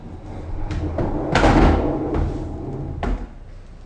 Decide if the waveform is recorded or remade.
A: recorded